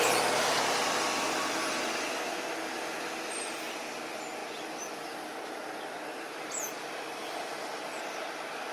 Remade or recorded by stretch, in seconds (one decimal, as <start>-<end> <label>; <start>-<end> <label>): 0.0-8.7 recorded